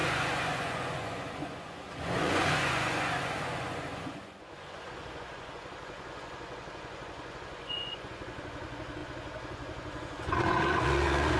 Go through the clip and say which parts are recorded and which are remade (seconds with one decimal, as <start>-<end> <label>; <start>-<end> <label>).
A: 0.0-11.4 remade